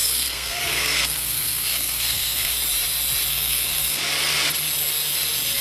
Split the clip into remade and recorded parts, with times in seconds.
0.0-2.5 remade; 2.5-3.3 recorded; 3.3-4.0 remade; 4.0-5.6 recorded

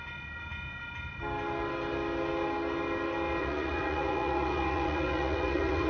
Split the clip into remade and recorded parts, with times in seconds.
0.0-3.4 recorded; 3.4-5.9 remade

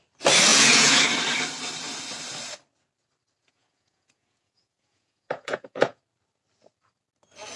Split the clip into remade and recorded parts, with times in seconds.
0.0-0.5 recorded; 0.5-1.0 remade; 1.0-3.4 recorded; 3.4-6.0 remade; 6.0-7.6 recorded